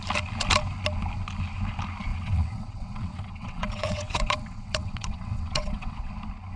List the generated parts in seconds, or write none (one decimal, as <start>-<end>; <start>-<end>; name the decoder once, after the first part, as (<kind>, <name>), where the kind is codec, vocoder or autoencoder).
2.1-6.1 (vocoder, WaveNeXt)